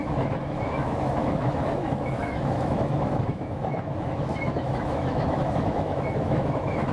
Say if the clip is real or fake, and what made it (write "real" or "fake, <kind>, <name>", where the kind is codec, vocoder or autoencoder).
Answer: fake, autoencoder, DAC-VAE